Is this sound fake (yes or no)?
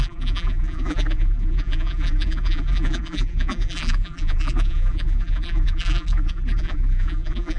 yes